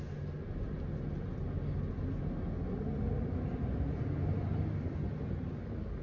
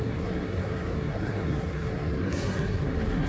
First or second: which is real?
first